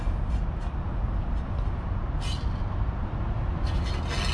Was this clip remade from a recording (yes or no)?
no